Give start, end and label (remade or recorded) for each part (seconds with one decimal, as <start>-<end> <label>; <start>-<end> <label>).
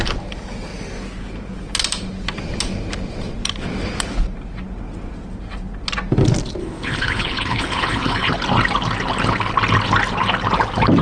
0.0-6.6 recorded; 6.6-8.3 remade; 8.3-11.0 recorded